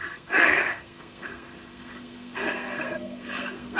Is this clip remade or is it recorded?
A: remade